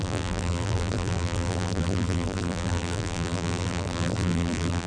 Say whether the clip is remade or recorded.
remade